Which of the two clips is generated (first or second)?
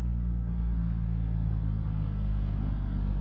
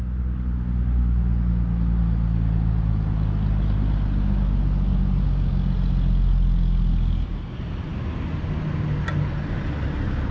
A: first